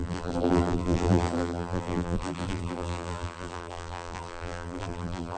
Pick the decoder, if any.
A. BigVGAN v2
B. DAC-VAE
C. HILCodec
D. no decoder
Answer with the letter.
A